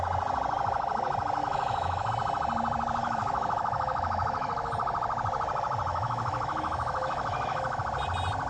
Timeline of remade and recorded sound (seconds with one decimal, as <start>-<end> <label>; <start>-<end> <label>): 0.0-1.4 recorded; 1.4-2.1 remade; 2.1-3.0 recorded; 3.0-4.7 remade; 4.7-5.9 recorded; 5.9-7.8 remade; 7.8-8.5 recorded